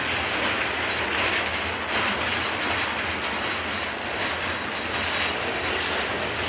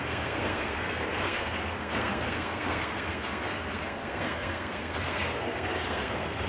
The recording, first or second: first